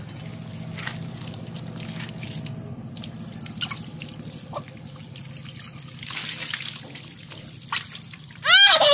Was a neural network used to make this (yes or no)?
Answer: no